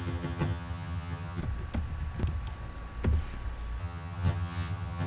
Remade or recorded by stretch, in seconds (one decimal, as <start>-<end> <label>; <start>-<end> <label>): 0.0-1.4 remade; 1.4-3.8 recorded; 3.8-5.1 remade